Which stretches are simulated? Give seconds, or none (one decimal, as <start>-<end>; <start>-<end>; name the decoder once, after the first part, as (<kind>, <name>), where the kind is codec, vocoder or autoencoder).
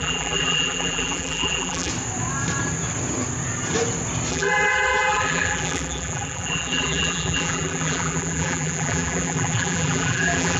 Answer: 0.0-1.9 (vocoder, BigVGAN v2); 4.3-10.6